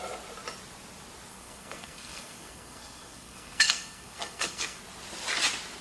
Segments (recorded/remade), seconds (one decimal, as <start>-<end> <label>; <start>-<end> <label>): 0.0-1.3 recorded; 1.3-4.8 remade; 4.8-5.8 recorded